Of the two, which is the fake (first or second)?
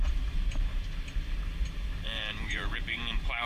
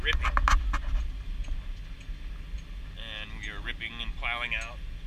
first